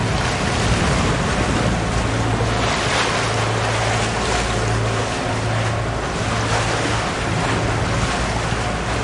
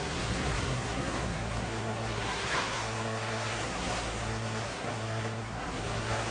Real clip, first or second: first